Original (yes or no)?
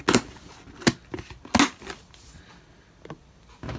yes